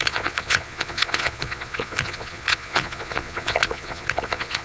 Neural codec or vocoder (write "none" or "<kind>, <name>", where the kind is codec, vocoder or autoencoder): vocoder, Vocos